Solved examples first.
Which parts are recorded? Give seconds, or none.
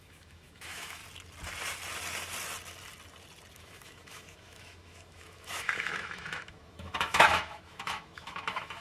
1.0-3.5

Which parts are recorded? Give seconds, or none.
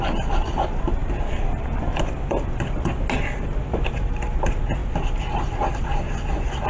0.0-6.7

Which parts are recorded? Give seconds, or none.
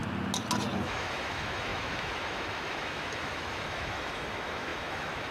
0.0-0.8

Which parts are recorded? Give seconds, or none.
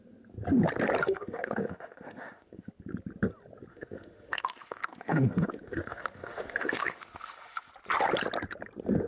0.0-1.0; 2.7-3.7; 7.7-9.1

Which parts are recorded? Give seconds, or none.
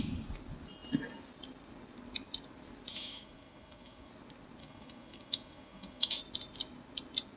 0.0-2.9; 4.1-4.6; 6.2-7.4